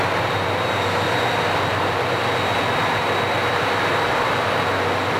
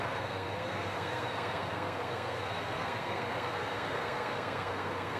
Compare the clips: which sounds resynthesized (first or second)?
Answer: second